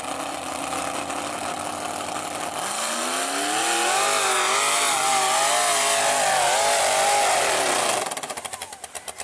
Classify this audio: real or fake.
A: real